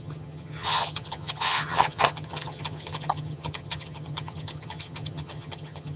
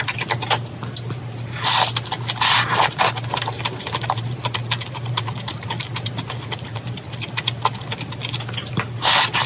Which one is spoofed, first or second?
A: first